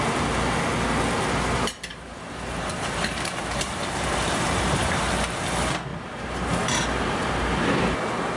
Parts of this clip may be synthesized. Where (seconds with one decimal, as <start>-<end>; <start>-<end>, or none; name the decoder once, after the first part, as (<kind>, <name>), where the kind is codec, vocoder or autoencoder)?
1.9-5.1 (vocoder, BigVGAN v2); 5.9-7.8